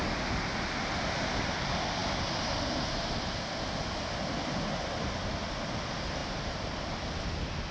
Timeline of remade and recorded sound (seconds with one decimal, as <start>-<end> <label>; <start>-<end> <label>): 0.0-6.2 recorded; 6.2-6.9 remade; 6.9-7.7 recorded

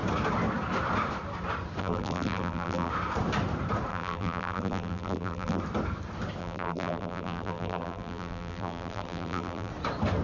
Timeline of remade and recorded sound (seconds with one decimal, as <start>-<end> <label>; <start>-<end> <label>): 0.0-1.8 recorded; 1.8-2.9 remade; 2.9-3.9 recorded; 3.9-5.6 remade; 5.6-6.4 recorded; 6.4-9.7 remade; 9.7-10.2 recorded

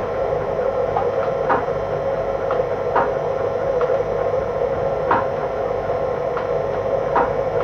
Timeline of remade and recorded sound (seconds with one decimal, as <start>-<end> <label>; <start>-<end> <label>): 0.0-0.6 remade; 0.6-7.6 recorded

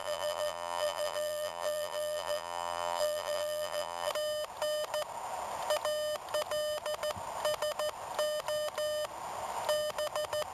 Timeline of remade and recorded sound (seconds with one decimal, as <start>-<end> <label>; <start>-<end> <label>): 0.0-4.1 remade; 4.1-10.5 recorded

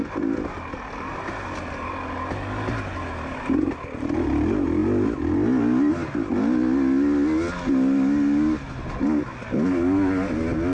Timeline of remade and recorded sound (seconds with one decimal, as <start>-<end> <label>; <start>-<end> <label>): 0.0-10.7 recorded

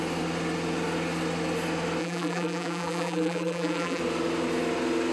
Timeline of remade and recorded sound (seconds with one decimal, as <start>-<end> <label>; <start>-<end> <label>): 0.0-2.0 recorded; 2.0-4.0 remade; 4.0-5.1 recorded